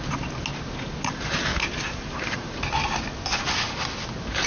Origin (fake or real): real